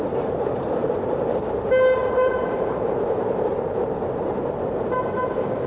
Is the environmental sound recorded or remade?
remade